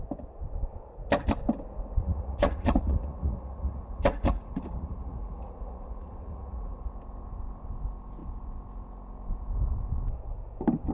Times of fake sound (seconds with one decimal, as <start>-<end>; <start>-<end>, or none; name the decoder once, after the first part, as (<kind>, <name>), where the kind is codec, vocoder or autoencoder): 2.0-6.9 (vocoder, Vocos)